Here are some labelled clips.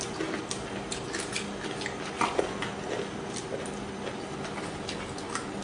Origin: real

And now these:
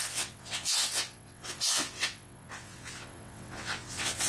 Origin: fake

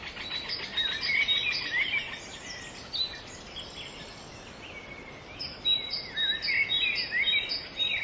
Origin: real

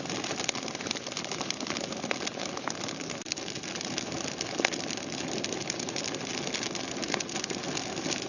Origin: real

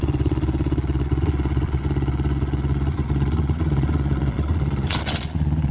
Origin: fake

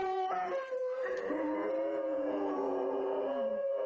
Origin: fake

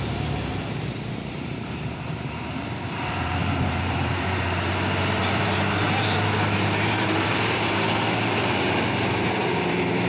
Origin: fake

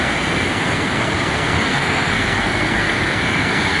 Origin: fake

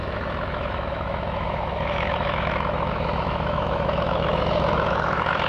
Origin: fake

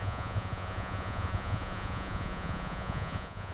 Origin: fake